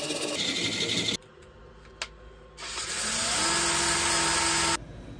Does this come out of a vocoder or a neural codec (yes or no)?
no